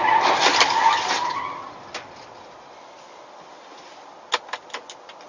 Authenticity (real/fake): real